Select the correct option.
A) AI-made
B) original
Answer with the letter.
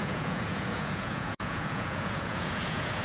A